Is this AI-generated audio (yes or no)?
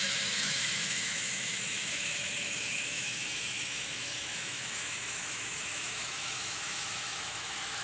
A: yes